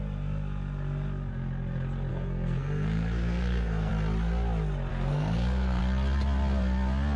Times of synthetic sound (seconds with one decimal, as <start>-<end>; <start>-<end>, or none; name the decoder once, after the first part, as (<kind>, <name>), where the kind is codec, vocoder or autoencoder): 2.1-3.9 (codec, SNAC); 4.9-5.8